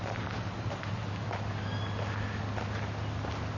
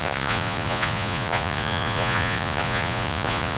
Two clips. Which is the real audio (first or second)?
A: first